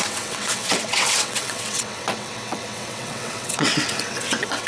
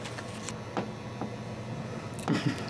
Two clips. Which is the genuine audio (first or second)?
second